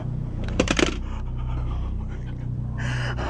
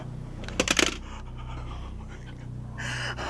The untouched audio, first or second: second